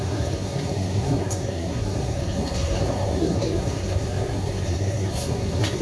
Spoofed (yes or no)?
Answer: yes